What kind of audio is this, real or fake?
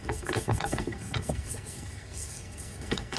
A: fake